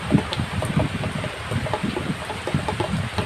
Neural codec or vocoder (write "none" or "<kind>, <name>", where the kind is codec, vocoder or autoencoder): vocoder, BigVGAN v2